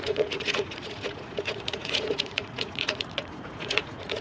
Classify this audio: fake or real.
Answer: fake